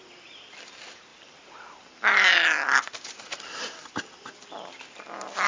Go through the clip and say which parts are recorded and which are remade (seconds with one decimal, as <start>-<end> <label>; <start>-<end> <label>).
0.0-1.1 recorded; 1.1-4.4 remade; 4.4-5.5 recorded